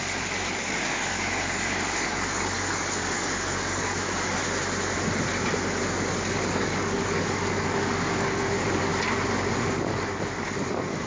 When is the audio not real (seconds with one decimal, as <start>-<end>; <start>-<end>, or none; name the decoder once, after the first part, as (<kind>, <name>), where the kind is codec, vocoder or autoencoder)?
0.0-4.4 (codec, DAC); 6.1-8.9; 9.9-11.1